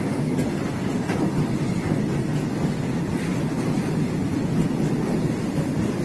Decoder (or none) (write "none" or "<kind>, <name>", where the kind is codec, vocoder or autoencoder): none